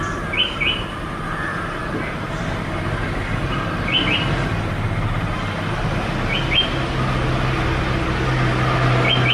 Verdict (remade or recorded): recorded